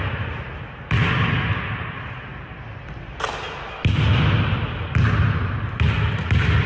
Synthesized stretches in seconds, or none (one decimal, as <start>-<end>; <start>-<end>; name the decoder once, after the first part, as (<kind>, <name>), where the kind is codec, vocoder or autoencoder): none